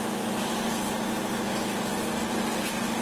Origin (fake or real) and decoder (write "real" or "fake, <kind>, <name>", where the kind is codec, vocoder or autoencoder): real